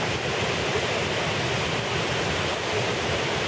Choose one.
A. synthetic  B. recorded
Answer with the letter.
B